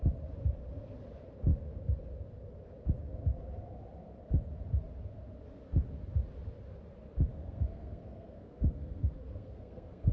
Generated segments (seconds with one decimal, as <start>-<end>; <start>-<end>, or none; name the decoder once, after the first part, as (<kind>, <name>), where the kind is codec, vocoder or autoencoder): 7.3-10.1 (codec, SNAC)